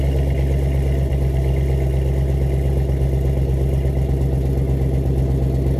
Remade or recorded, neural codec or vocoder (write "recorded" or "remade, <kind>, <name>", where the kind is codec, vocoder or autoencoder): recorded